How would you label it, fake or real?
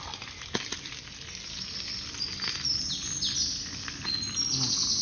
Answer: real